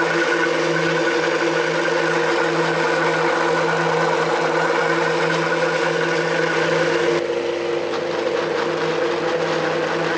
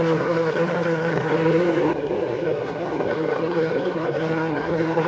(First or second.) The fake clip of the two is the second